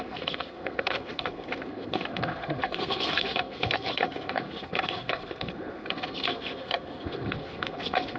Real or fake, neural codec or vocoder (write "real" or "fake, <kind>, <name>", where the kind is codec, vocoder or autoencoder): fake, codec, SNAC